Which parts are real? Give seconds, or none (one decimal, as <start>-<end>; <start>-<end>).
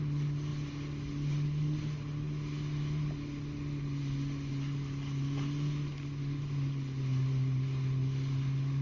0.0-8.8